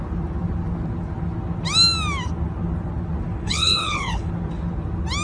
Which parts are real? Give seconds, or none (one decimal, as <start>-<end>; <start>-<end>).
0.0-3.4; 4.3-5.2